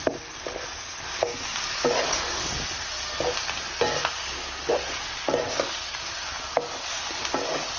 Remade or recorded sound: recorded